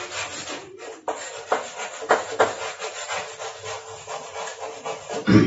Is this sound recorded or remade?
recorded